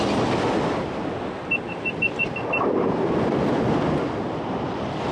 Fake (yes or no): no